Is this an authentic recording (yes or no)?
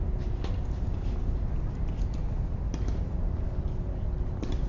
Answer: yes